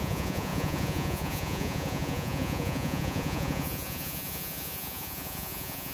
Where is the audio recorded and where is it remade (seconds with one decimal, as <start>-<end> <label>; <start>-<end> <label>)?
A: 0.0-5.9 remade